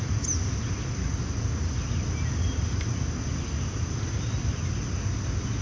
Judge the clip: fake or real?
real